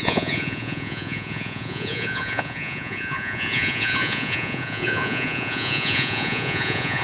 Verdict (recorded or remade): remade